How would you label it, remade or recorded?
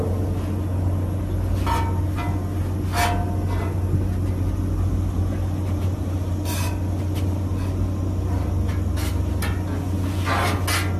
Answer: recorded